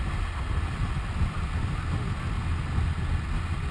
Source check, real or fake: real